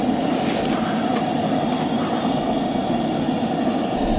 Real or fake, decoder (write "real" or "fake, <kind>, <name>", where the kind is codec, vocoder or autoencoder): real